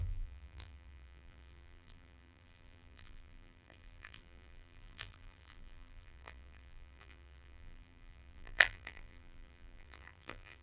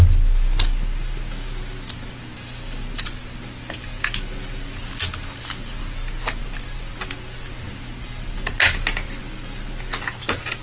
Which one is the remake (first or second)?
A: first